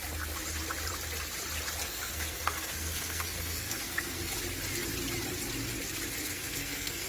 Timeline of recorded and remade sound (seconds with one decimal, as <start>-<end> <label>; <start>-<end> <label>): 0.0-1.8 recorded; 1.8-4.3 remade; 4.3-6.2 recorded; 6.2-7.1 remade